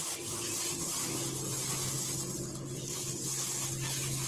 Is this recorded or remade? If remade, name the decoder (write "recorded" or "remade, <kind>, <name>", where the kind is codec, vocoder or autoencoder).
recorded